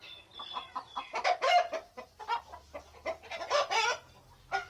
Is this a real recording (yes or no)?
yes